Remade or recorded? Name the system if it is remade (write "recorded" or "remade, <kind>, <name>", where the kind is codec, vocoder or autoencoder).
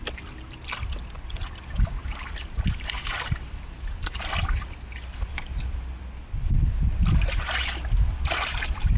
recorded